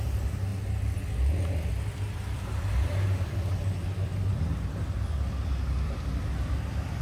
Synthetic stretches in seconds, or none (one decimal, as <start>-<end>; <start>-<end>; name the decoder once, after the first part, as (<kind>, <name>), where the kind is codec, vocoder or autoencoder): 0.0-0.5 (vocoder, BigVGAN v2); 1.7-7.0